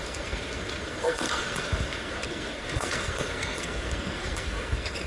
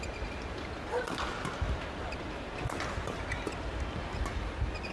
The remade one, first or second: first